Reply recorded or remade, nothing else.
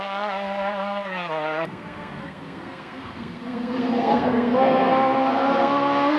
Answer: remade